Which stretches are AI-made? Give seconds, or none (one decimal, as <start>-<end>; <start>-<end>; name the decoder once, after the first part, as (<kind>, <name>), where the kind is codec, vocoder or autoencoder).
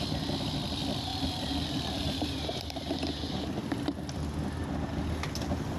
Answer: 1.1-2.9 (vocoder, BigVGAN v2)